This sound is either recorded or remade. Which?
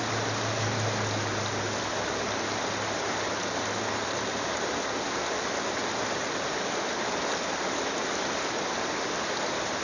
recorded